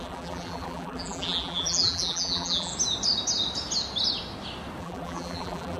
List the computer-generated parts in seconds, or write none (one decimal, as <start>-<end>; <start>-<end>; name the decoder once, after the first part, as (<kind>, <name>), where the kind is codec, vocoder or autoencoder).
0.0-2.7 (vocoder, BigVGAN v2); 4.8-5.8